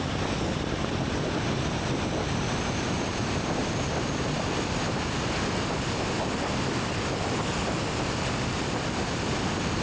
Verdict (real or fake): real